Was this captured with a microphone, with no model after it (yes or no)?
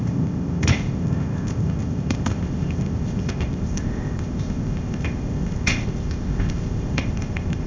no